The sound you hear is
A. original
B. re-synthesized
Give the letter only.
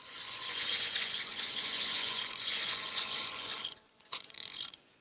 B